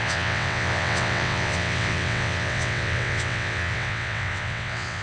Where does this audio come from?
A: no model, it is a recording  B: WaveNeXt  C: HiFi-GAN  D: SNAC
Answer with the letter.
B